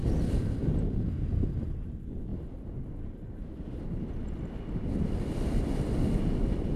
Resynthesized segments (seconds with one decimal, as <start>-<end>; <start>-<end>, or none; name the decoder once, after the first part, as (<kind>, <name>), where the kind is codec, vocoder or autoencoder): 2.3-6.2 (vocoder, BigVGAN v2)

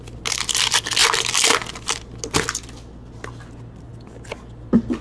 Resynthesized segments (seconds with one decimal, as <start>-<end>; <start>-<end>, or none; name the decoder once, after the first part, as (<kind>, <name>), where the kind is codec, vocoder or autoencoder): none

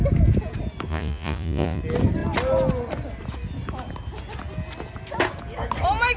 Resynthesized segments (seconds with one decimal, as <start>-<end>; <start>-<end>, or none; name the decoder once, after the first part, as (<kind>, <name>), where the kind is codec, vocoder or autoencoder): 0.9-1.8 (vocoder, Vocos)

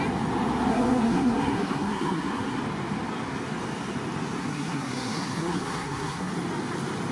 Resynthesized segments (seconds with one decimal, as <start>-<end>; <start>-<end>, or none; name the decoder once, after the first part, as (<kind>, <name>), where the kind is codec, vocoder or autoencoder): 0.7-2.6 (codec, SNAC); 4.4-6.3